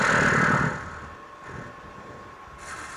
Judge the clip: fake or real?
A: real